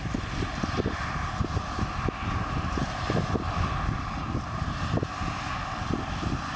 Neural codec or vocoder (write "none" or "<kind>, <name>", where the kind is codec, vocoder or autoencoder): none